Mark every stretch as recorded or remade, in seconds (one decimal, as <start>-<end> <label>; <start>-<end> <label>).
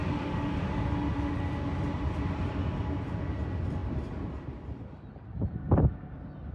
0.0-0.6 remade; 0.6-6.5 recorded